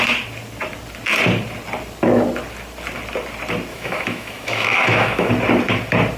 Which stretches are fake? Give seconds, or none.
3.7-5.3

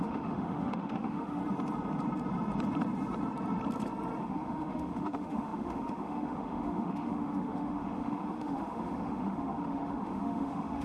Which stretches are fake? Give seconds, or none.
0.0-1.4; 4.2-10.8

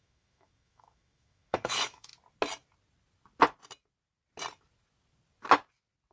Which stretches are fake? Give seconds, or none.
0.0-2.1